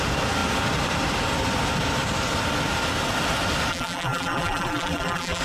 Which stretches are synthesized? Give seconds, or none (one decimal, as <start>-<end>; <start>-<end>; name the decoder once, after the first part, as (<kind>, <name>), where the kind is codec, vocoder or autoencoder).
3.7-5.4 (vocoder, BigVGAN v2)

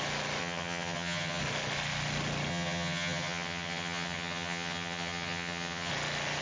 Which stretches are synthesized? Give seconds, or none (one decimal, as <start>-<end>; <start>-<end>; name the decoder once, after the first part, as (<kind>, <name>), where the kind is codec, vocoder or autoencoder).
0.4-1.4 (vocoder, HiFi-GAN); 2.5-5.9

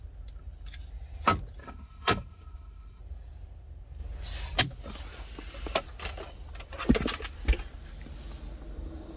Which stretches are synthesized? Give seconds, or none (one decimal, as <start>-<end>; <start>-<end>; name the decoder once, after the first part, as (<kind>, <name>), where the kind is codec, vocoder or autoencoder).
1.6-3.0 (codec, HILCodec)

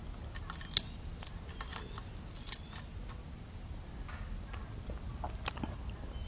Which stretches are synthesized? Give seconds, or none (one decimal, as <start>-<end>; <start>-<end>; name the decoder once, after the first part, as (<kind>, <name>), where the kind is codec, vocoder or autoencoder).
none

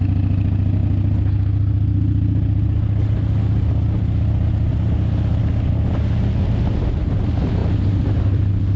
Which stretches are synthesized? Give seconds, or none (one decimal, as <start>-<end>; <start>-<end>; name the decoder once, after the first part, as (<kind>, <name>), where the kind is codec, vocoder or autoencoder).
7.6-8.2 (vocoder, BigVGAN v2)